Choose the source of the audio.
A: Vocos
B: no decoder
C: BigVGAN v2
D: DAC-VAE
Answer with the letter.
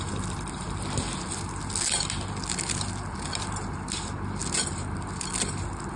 B